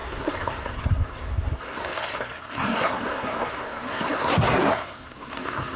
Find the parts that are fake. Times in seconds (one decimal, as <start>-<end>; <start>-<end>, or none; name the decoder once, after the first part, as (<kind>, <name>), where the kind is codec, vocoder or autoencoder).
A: 0.0-5.8 (codec, SNAC)

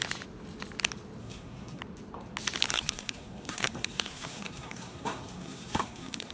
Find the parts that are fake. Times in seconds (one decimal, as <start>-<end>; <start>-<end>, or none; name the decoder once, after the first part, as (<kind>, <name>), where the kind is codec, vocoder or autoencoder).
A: 1.2-1.8 (codec, SNAC); 2.7-6.3